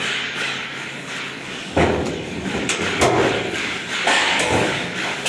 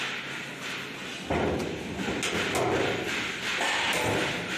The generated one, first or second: first